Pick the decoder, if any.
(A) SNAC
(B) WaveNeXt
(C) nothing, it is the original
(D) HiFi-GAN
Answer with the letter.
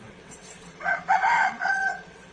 B